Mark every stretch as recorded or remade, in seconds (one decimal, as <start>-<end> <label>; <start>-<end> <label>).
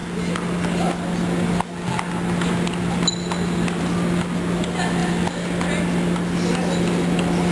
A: 0.0-7.5 recorded